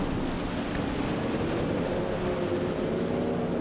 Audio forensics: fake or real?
real